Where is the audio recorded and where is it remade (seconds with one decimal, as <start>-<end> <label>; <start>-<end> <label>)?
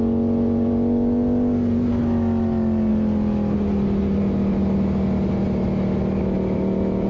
0.0-7.1 recorded